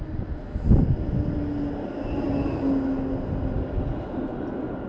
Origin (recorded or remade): recorded